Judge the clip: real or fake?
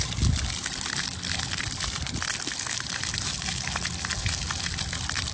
real